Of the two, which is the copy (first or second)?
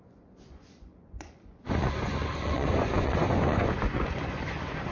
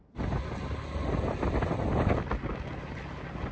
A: first